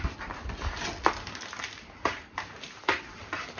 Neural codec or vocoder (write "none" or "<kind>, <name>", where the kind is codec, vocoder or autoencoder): none